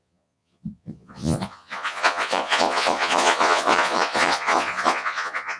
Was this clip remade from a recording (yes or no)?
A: yes